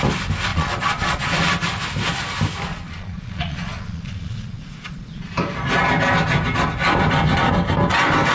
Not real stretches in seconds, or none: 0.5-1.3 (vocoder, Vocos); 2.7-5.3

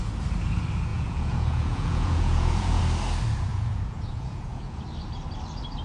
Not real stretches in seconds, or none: 0.9-2.8 (vocoder, Vocos); 3.5-4.8

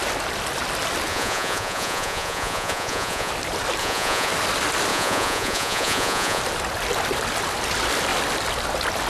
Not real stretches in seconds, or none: 1.1-3.3 (vocoder, Vocos); 3.8-4.3; 4.9-6.4

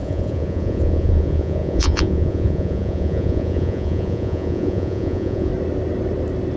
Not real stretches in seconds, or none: 0.0-5.5 (vocoder, Vocos)

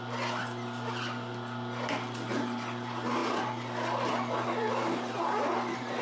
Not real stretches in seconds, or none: none

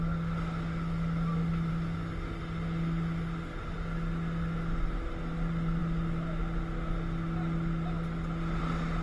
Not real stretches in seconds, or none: none

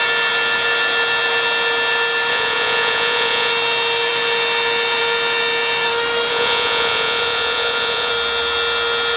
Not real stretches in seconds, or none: 2.3-3.5 (vocoder, Vocos); 6.3-8.1